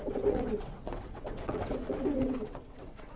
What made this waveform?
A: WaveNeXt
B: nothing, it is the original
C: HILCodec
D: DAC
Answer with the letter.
A